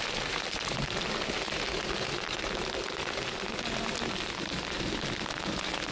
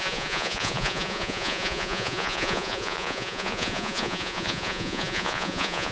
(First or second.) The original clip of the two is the first